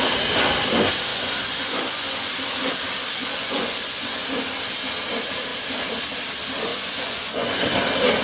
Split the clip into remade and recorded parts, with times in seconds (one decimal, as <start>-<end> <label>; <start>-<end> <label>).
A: 0.0-1.1 recorded; 1.1-2.3 remade; 2.3-3.2 recorded; 3.2-4.2 remade; 4.2-6.7 recorded; 6.7-7.7 remade; 7.7-8.2 recorded